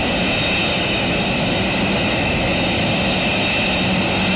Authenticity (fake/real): real